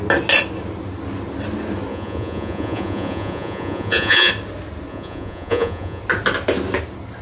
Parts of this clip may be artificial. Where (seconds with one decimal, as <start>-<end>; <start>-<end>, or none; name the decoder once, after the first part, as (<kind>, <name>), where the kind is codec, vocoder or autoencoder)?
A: 1.9-4.3 (vocoder, Vocos); 4.9-6.0